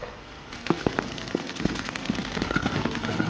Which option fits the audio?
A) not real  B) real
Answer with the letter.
A